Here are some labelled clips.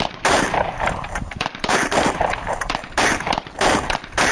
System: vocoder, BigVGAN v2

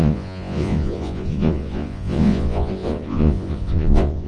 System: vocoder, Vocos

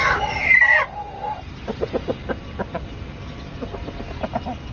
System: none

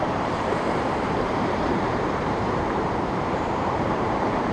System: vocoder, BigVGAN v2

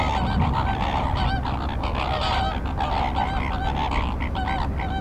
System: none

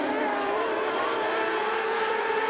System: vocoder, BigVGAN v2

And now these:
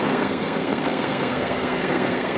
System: codec, SNAC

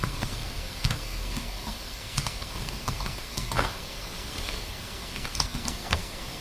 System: codec, SNAC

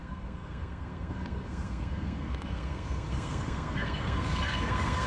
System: codec, SNAC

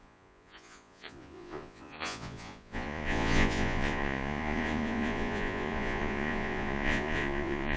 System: vocoder, Vocos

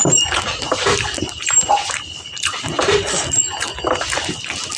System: none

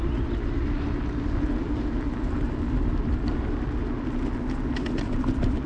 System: none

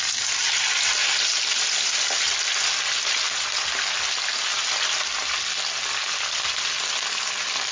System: none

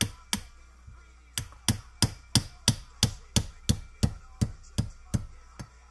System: none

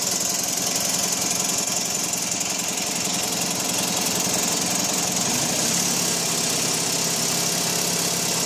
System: none